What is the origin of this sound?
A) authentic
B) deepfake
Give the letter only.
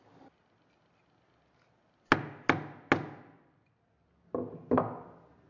A